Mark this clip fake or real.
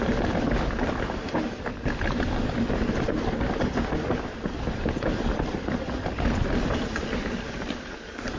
real